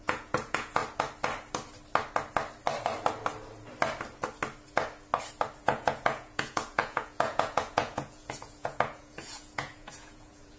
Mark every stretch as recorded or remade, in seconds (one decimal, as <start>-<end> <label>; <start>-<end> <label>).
0.0-0.8 remade; 0.8-5.6 recorded; 5.6-10.6 remade